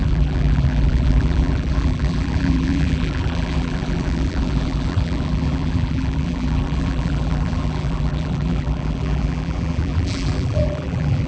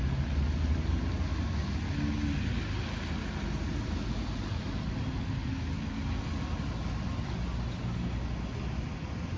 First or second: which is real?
second